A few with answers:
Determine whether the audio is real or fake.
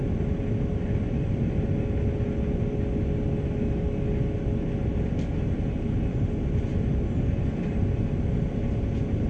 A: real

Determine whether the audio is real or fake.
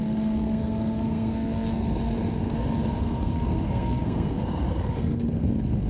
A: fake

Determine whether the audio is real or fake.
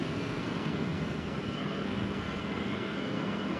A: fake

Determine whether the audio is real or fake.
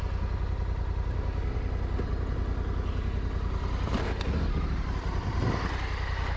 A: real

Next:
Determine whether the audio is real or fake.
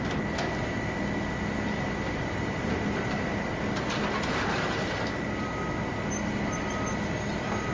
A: real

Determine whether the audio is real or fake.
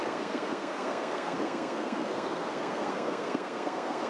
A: fake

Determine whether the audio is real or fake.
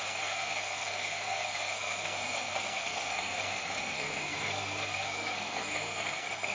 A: fake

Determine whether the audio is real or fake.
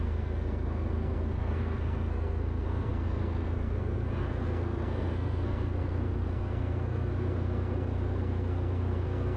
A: fake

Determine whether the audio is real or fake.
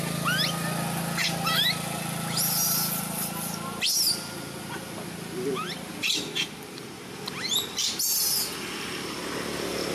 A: real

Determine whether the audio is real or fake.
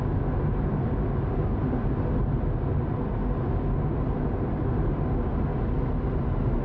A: real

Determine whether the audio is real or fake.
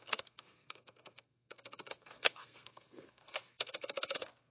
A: fake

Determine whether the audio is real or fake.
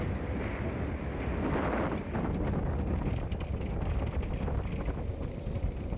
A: real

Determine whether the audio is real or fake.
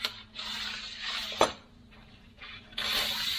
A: real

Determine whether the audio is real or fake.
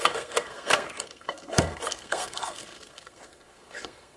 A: fake